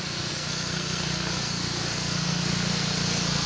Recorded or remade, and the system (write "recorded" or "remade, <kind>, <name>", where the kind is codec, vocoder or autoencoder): remade, codec, SNAC